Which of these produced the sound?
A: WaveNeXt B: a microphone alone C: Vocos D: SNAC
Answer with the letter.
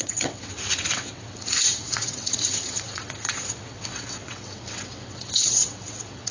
A